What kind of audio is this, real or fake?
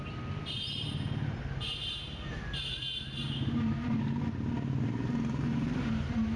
real